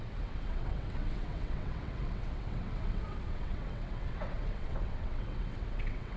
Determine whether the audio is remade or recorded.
remade